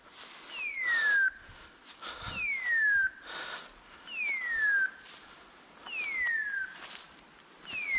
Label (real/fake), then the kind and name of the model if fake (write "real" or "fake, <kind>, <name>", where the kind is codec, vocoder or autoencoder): real